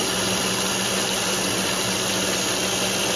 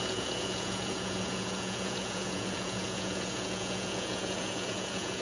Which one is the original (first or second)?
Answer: first